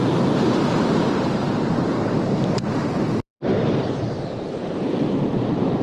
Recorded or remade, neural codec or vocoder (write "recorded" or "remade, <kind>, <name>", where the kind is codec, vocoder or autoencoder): remade, vocoder, BigVGAN v2